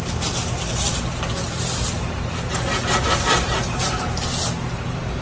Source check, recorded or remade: recorded